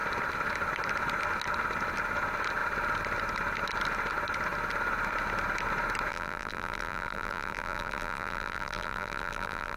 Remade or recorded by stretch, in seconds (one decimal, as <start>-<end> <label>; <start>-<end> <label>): 0.0-6.1 recorded; 6.1-9.8 remade